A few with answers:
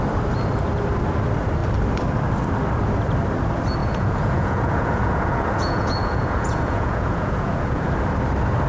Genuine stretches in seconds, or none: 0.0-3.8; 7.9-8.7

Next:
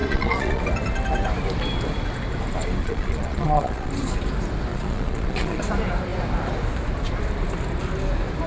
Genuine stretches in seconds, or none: 0.6-2.8; 3.9-4.7; 5.6-8.5

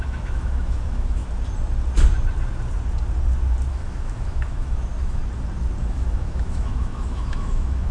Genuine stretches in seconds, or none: 1.2-3.7; 5.2-5.8

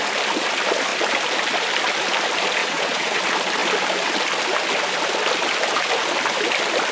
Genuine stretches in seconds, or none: 0.0-2.6; 3.2-6.9

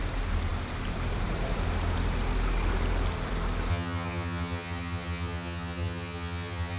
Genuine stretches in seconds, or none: 0.0-3.7

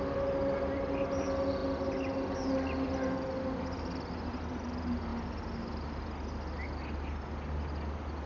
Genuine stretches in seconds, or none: 0.0-8.3

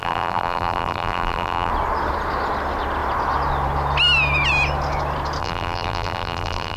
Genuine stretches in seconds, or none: 1.7-5.4

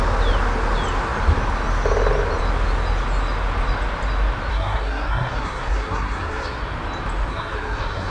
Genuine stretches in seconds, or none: 0.0-4.5; 6.6-7.3